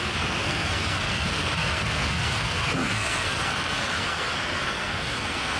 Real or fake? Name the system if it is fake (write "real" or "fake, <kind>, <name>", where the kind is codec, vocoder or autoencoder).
fake, codec, SNAC